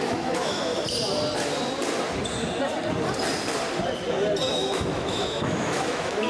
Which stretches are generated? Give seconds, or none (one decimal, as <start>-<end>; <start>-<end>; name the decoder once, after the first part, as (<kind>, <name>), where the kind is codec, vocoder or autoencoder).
0.0-0.7 (autoencoder, DAC-VAE); 4.5-6.3